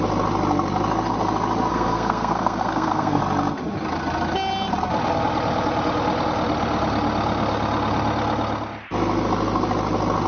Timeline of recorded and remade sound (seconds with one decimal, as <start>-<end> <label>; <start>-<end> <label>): 0.0-1.7 recorded; 1.7-3.2 remade; 3.2-10.3 recorded